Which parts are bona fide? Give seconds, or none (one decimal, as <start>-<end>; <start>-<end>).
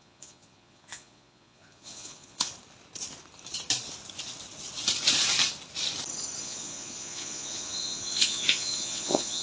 2.5-6.4